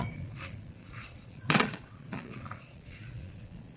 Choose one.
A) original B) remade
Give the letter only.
B